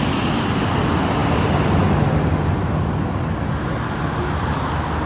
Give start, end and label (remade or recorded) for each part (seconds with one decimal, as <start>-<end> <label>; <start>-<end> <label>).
0.0-5.1 recorded